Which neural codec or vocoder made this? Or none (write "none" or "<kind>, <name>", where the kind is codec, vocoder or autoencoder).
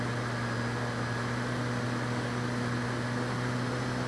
none